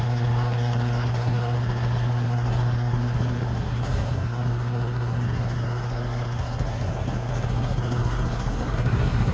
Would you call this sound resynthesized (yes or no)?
yes